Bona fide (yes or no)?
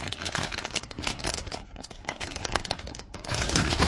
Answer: no